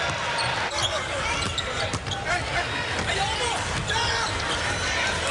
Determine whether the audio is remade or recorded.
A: recorded